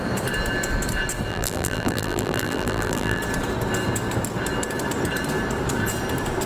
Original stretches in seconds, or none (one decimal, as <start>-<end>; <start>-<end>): 0.0-1.3; 3.2-6.5